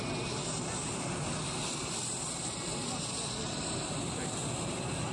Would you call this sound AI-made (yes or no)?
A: no